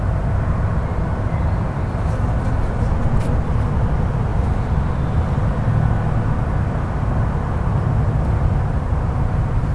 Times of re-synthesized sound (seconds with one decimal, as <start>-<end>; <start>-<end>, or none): none